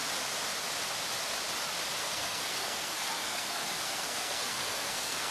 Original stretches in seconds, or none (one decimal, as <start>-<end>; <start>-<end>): 0.0-2.0